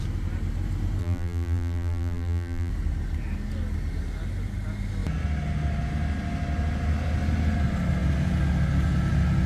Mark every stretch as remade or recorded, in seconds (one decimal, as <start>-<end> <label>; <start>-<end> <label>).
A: 0.0-1.0 recorded; 1.0-2.7 remade; 2.7-9.5 recorded